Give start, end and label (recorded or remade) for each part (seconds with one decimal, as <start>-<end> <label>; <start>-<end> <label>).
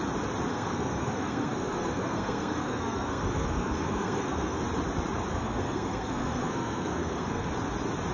0.0-0.5 recorded; 0.5-4.6 remade; 4.6-5.3 recorded; 5.3-7.5 remade; 7.5-8.1 recorded